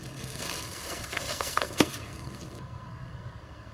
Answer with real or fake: fake